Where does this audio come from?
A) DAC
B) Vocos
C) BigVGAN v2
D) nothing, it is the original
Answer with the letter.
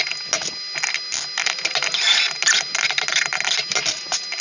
D